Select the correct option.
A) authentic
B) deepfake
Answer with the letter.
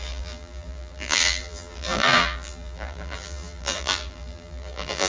B